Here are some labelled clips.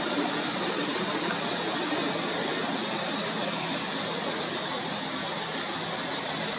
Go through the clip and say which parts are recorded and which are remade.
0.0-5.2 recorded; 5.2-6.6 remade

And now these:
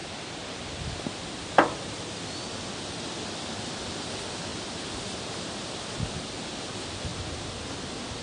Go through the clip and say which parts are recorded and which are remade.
0.0-1.9 remade; 1.9-4.5 recorded; 4.5-6.4 remade; 6.4-8.2 recorded

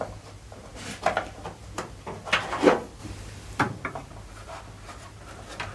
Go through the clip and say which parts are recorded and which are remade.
0.0-3.0 recorded; 3.0-3.6 remade; 3.6-5.7 recorded

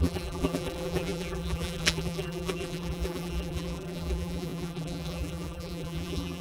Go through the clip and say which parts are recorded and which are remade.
0.0-6.4 remade

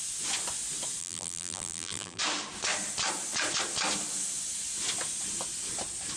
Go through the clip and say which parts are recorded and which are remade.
0.0-1.0 recorded; 1.0-2.2 remade; 2.2-6.2 recorded